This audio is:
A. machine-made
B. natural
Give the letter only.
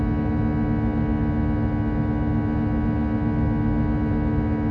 B